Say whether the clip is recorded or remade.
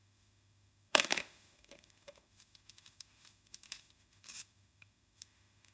remade